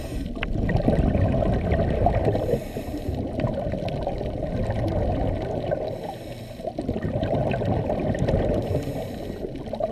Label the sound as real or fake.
real